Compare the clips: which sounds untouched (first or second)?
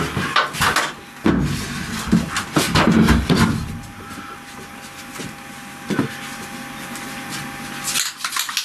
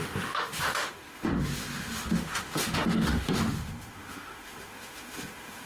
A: first